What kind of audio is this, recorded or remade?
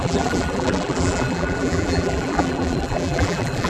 remade